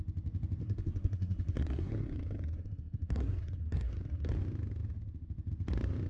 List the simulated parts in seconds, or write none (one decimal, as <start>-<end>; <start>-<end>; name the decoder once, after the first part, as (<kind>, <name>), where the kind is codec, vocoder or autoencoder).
0.6-4.3 (codec, SNAC)